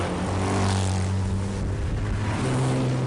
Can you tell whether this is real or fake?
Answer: real